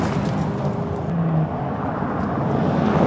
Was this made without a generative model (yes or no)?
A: yes